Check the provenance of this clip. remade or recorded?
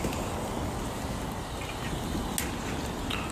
recorded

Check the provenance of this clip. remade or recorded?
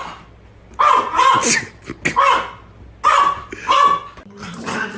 recorded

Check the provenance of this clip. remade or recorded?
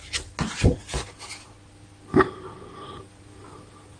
recorded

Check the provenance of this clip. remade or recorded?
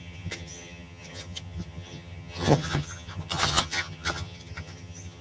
remade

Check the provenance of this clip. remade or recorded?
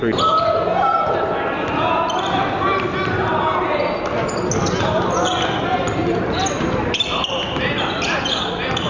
recorded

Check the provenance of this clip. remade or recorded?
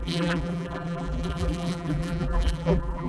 remade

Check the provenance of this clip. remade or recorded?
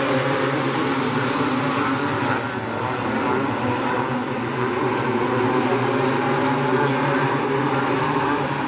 recorded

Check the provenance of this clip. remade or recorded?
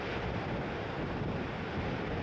recorded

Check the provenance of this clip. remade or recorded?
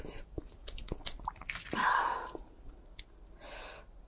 recorded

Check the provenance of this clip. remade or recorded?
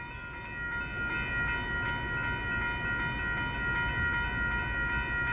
recorded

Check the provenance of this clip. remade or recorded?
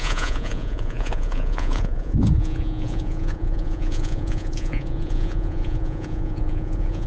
remade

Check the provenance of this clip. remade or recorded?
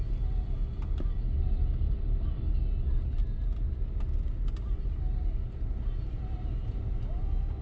recorded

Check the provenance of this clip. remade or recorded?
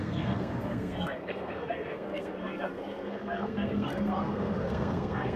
remade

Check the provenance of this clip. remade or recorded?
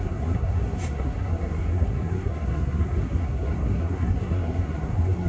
remade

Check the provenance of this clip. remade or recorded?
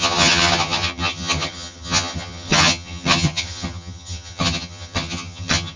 remade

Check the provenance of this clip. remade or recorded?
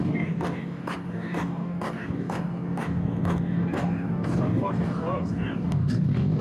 remade